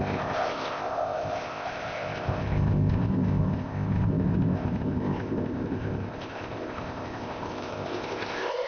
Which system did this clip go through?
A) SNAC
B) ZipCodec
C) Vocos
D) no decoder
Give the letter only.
B